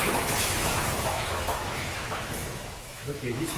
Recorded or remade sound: remade